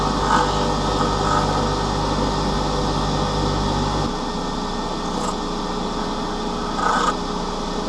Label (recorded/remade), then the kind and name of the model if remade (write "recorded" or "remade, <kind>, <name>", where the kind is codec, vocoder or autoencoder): recorded